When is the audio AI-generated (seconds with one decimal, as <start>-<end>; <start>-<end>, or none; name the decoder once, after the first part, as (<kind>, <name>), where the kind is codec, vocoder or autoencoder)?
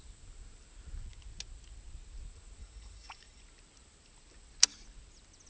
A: 2.6-3.4 (vocoder, Vocos)